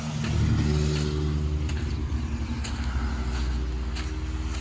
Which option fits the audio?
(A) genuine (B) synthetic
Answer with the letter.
A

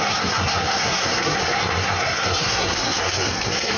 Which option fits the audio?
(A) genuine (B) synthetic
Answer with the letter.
B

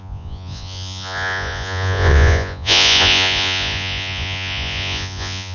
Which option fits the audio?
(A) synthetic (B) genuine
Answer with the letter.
A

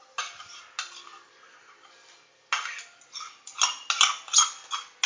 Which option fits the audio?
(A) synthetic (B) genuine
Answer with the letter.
B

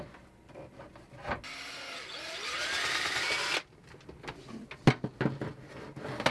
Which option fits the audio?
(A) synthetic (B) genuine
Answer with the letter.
B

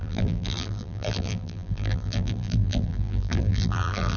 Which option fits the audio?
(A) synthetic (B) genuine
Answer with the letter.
A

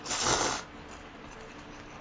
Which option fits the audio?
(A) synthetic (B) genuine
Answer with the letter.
B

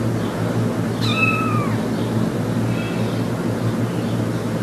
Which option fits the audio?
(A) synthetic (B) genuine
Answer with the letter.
B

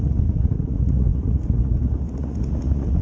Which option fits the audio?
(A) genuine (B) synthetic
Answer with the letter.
B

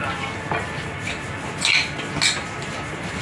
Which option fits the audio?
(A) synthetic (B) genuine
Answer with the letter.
B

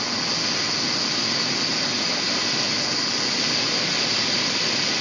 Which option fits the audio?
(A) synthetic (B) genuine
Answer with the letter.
B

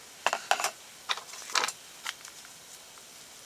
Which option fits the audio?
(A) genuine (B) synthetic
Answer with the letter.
A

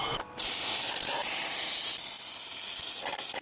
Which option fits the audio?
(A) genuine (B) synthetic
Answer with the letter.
A